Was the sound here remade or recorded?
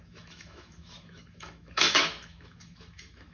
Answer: remade